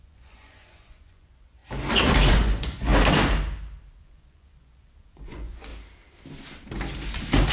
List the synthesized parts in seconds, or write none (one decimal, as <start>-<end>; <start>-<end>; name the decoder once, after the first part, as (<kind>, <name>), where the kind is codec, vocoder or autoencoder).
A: 0.0-1.6 (vocoder, Vocos); 2.3-2.9; 4.0-5.7